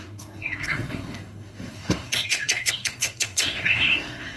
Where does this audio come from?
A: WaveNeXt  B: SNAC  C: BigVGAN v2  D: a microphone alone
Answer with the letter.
B